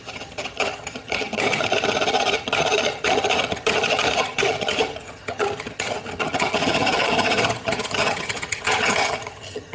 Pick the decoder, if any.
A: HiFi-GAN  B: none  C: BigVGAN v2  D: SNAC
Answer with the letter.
A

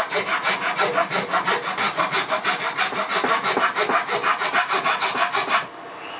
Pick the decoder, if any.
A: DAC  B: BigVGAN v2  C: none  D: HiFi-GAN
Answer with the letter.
C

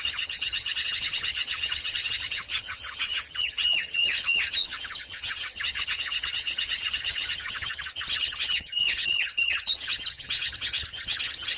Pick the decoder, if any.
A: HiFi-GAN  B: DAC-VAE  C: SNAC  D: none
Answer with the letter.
A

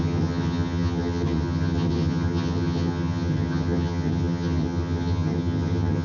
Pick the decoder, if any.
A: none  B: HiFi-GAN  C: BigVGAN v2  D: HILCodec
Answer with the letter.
B